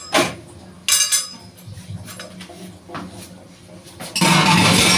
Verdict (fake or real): real